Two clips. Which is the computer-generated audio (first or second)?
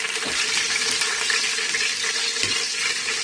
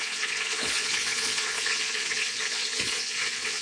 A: second